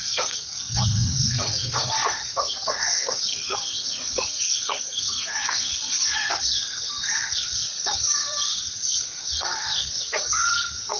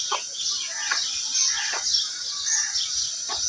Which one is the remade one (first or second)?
first